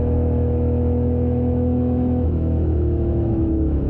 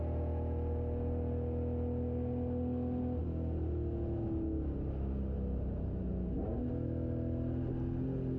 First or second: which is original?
second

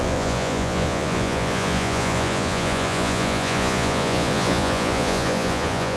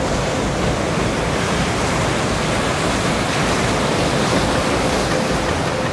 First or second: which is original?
second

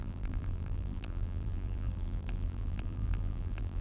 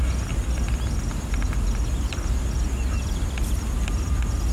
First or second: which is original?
second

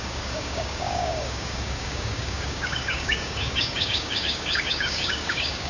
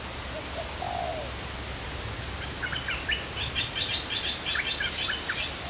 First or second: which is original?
second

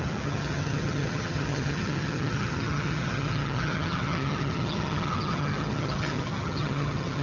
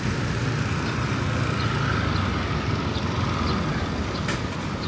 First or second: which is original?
second